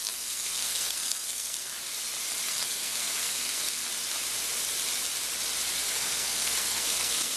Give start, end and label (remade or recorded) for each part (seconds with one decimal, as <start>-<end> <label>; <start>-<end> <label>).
0.0-1.7 remade; 1.7-2.5 recorded; 2.5-3.8 remade; 3.8-5.9 recorded; 5.9-7.4 remade